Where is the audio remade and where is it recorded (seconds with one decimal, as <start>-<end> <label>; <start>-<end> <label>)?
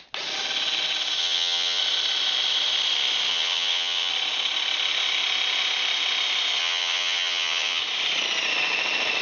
0.0-1.2 recorded; 1.2-1.8 remade; 1.8-3.3 recorded; 3.3-4.1 remade; 4.1-6.6 recorded; 6.6-7.8 remade; 7.8-9.2 recorded